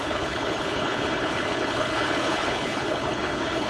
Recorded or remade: remade